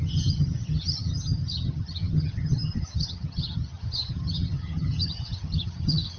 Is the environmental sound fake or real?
fake